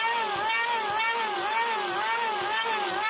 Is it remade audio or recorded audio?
recorded